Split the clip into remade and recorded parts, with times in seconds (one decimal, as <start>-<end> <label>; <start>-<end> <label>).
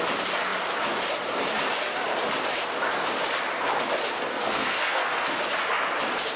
0.0-4.3 recorded; 4.3-5.1 remade; 5.1-6.4 recorded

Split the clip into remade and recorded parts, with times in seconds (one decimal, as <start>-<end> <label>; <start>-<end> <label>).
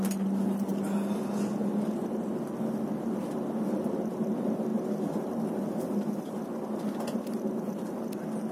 0.0-8.5 recorded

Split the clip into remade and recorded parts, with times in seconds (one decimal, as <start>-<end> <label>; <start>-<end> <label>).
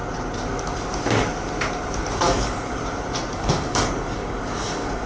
0.0-2.1 recorded; 2.1-2.8 remade; 2.8-3.3 recorded; 3.3-5.1 remade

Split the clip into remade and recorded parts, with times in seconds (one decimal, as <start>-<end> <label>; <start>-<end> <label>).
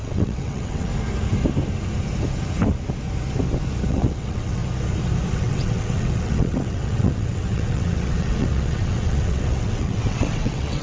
0.0-0.9 remade; 0.9-3.9 recorded; 3.9-4.6 remade; 4.6-5.3 recorded; 5.3-10.8 remade